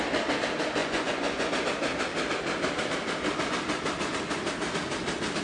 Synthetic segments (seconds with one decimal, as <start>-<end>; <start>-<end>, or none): 0.8-1.5